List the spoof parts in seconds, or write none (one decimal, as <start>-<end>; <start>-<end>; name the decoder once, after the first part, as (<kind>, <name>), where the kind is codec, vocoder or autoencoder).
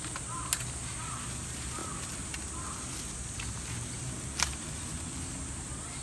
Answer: none